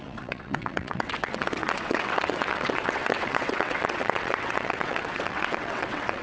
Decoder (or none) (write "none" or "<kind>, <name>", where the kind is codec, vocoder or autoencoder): vocoder, WaveNeXt